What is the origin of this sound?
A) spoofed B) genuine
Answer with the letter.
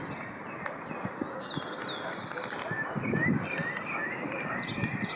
B